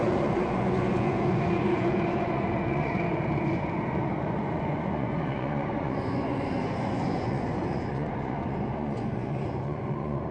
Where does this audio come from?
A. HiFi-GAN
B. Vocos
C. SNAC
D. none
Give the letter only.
B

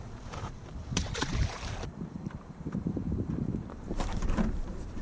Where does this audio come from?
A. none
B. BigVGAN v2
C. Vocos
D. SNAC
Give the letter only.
B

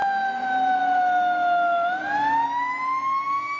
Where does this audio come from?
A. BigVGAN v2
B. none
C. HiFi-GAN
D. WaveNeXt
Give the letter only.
B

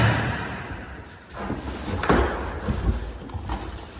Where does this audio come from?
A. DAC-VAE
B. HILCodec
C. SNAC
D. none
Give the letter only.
D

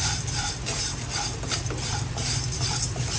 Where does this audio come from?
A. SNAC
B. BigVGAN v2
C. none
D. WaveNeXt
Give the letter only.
C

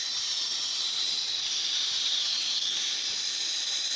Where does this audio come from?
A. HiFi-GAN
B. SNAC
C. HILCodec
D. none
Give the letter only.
D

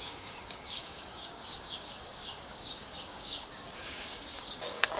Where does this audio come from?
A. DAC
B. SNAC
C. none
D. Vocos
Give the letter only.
A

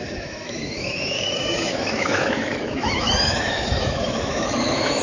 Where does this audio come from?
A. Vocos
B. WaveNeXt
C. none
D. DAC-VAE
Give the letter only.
D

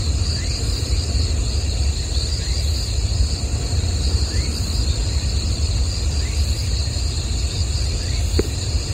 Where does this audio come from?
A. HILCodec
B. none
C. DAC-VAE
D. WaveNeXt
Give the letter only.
B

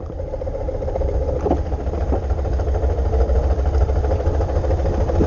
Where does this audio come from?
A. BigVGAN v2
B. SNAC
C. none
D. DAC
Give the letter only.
C